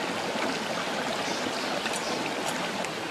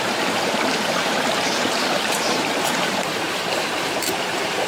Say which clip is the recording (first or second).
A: first